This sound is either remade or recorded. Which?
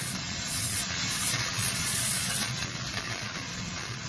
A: remade